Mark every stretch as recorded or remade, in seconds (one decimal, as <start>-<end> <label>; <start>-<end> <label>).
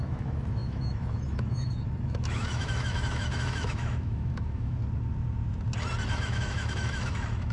0.0-4.8 remade; 4.8-6.1 recorded; 6.1-7.5 remade